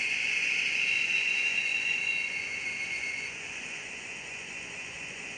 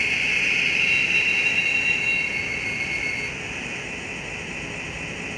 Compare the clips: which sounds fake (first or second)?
first